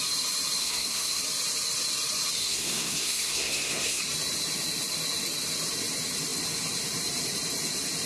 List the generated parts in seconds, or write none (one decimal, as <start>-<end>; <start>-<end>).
0.6-1.2; 2.4-4.0